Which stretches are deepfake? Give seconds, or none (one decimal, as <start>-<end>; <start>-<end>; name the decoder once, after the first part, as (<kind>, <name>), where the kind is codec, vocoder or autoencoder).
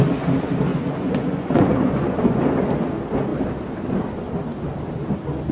0.7-2.4 (vocoder, Vocos)